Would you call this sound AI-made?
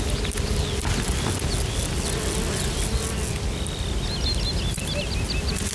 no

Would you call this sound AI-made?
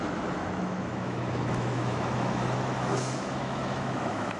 yes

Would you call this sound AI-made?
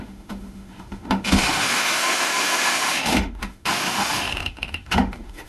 yes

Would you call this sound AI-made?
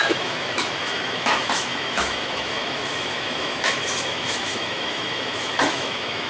yes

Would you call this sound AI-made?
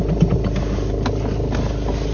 no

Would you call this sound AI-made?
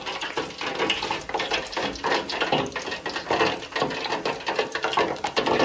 no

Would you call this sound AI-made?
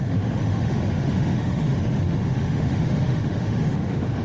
yes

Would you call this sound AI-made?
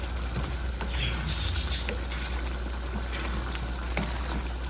no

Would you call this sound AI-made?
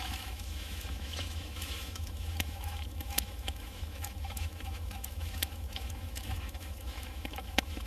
yes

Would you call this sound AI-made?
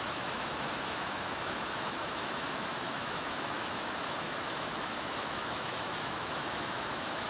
yes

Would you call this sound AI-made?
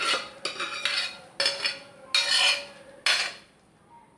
no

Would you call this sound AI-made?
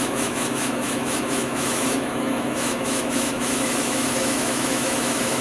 yes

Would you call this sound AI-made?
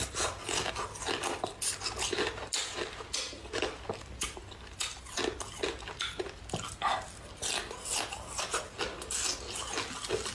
no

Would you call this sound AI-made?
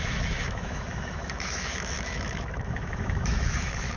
yes